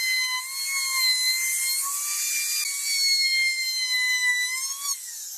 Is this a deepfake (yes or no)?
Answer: no